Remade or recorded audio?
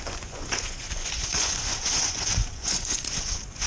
remade